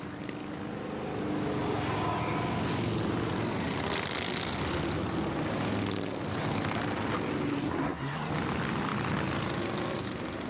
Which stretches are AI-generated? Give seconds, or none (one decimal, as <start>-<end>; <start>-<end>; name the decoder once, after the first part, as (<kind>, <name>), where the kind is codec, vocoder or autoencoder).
7.6-8.3 (codec, SNAC)